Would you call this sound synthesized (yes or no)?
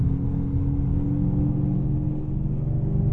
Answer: no